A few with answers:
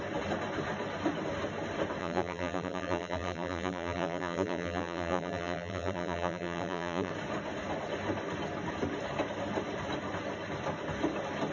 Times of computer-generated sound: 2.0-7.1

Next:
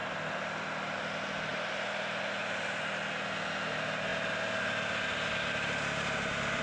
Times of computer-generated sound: 0.0-1.0; 1.5-2.2

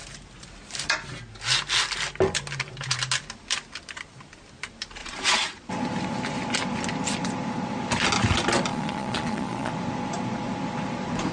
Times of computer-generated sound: 5.0-5.7; 8.7-9.7

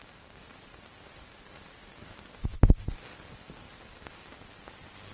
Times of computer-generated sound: none

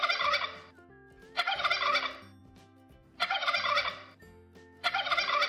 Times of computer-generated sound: 2.4-3.7

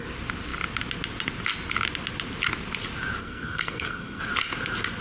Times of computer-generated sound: 3.2-4.2